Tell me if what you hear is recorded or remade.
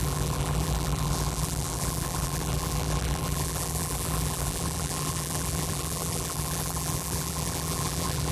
remade